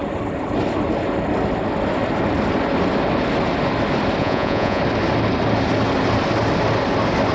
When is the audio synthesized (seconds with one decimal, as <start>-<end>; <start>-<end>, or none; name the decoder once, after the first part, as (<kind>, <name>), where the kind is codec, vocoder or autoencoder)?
4.2-4.8 (vocoder, Vocos)